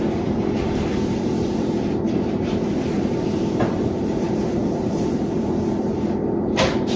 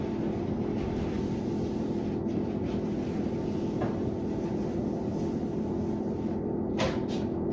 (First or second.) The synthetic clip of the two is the first